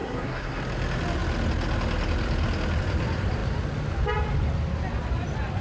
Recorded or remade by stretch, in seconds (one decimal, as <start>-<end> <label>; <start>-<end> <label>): 0.0-0.6 remade; 0.6-5.6 recorded